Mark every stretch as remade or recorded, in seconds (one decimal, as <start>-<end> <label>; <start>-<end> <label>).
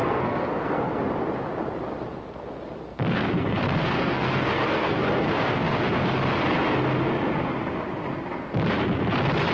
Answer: 0.0-1.0 remade; 1.0-2.9 recorded; 2.9-5.8 remade; 5.8-9.5 recorded